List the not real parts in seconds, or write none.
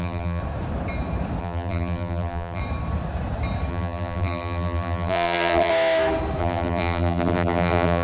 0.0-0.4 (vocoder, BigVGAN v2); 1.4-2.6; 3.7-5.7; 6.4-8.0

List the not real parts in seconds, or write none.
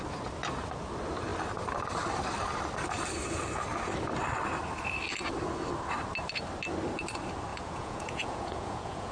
7.5-9.1 (vocoder, Vocos)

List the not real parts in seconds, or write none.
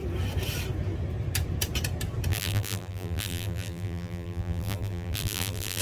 2.3-5.8 (vocoder, BigVGAN v2)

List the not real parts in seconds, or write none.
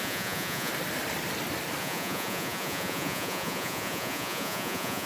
0.0-0.7 (vocoder, Vocos); 1.8-5.1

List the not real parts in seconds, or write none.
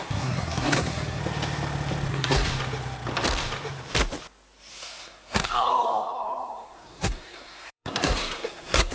0.0-1.2 (codec, SNAC); 2.1-2.5; 4.7-8.9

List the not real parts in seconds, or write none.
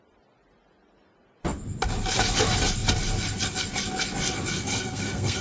4.5-5.4 (codec, SNAC)